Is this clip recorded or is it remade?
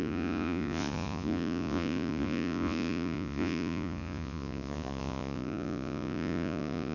remade